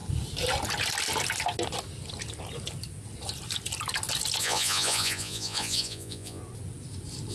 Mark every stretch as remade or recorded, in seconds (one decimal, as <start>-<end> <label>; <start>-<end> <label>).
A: 0.0-4.4 recorded; 4.4-6.4 remade; 6.4-7.3 recorded